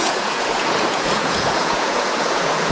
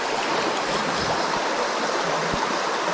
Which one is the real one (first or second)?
second